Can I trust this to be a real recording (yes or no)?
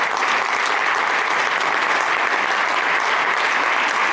yes